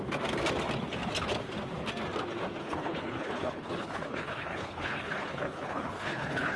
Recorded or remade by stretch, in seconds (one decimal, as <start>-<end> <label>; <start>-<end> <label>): 0.0-2.6 recorded; 2.6-6.6 remade